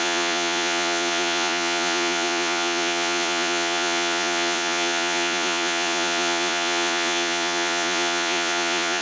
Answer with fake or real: fake